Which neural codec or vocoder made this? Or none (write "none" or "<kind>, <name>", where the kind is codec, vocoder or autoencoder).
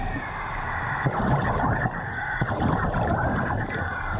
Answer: none